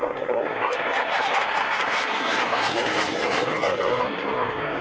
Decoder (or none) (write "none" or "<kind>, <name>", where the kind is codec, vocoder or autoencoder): codec, SNAC